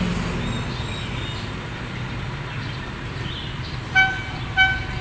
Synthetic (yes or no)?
no